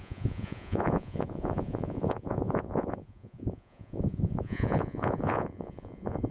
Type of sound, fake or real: fake